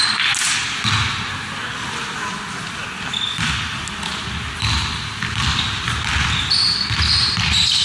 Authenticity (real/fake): real